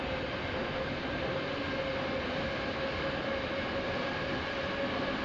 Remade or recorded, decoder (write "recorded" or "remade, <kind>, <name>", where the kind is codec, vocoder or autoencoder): recorded